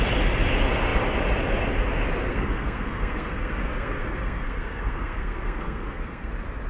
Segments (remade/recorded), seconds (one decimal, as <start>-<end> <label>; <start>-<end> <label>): 0.0-2.3 recorded; 2.3-6.3 remade; 6.3-6.7 recorded